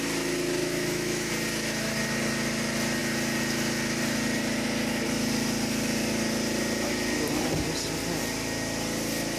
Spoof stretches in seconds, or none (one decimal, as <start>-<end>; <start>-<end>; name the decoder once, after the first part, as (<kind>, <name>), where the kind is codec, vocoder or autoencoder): 0.6-1.3 (autoencoder, DAC-VAE)